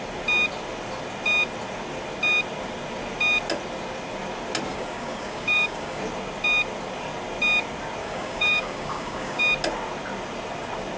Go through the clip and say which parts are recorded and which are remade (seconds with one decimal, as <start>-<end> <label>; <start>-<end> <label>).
0.0-4.7 recorded; 4.7-6.0 remade; 6.0-8.0 recorded; 8.0-9.4 remade; 9.4-11.0 recorded